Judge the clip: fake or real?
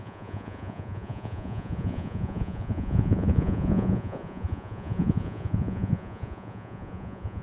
fake